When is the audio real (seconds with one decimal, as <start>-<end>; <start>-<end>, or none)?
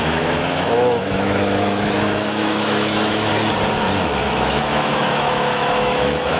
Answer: 3.3-4.2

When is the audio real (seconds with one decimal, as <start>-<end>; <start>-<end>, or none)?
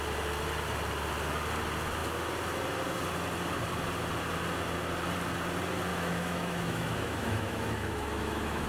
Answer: 0.0-5.9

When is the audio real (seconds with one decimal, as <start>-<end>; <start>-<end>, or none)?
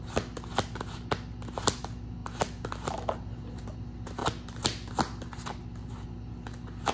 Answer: 0.0-6.9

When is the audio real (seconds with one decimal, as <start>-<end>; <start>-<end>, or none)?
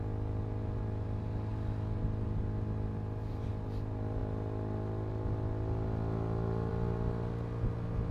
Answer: 0.0-8.1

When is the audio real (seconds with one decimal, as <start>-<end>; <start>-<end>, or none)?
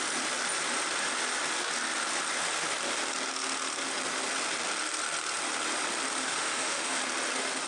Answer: 0.0-6.2; 7.0-7.7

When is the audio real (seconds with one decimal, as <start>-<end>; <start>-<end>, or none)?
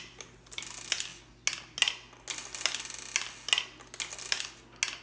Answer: 0.0-5.0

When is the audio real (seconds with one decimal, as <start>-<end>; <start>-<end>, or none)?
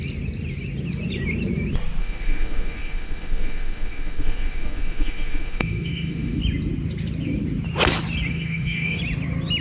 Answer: 0.0-2.0; 6.4-8.3; 9.0-9.6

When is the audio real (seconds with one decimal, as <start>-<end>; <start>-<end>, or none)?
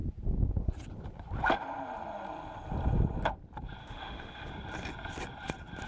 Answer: 0.0-3.8; 4.5-5.9